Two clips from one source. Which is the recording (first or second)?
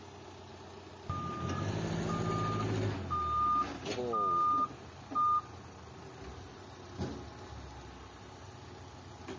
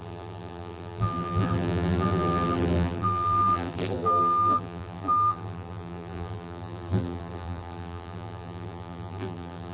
first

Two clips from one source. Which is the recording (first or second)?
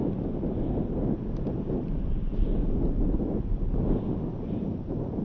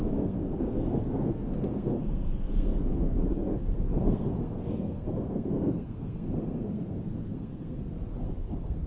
first